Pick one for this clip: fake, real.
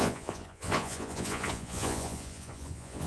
fake